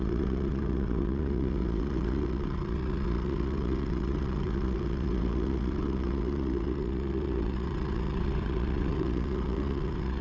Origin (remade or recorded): remade